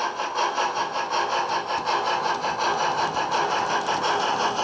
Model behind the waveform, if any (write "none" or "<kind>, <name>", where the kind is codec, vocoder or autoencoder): none